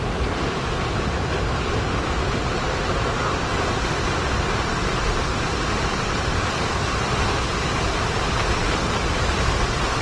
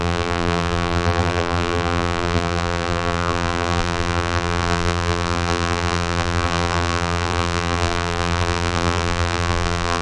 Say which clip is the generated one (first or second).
second